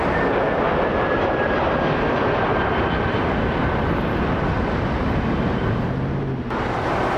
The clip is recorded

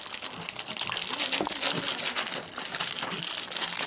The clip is remade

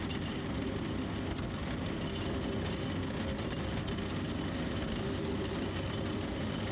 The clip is recorded